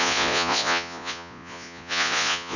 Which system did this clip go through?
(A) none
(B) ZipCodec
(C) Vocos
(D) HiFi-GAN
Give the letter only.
C